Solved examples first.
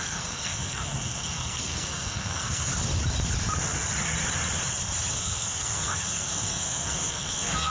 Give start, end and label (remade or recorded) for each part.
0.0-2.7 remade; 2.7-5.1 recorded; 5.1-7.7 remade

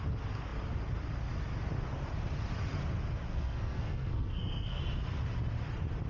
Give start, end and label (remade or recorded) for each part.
0.0-3.3 recorded; 3.3-4.8 remade; 4.8-6.1 recorded

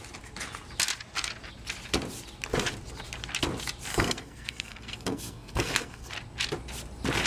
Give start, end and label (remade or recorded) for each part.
0.0-3.9 recorded; 3.9-6.1 remade; 6.1-7.3 recorded

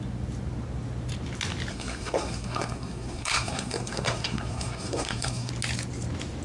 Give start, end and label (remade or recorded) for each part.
0.0-1.7 recorded; 1.7-5.5 remade; 5.5-6.4 recorded

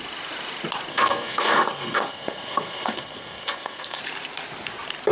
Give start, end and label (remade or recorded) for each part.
0.0-0.9 recorded; 0.9-4.0 remade; 4.0-5.1 recorded

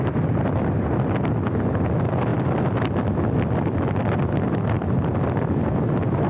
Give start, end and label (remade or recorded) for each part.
0.0-6.3 recorded